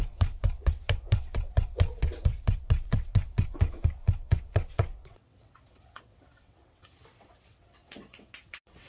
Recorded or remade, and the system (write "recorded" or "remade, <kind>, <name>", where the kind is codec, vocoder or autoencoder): remade, vocoder, WaveNeXt